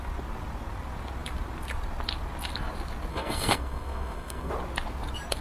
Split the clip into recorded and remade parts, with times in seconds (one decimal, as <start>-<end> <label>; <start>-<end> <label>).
0.0-3.1 recorded; 3.1-4.5 remade; 4.5-5.4 recorded